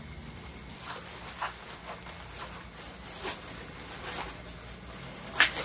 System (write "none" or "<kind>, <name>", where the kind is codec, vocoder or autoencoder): none